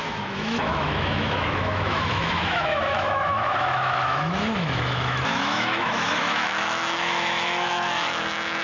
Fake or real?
fake